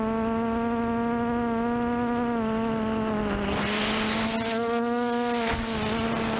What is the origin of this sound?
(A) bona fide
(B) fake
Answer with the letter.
A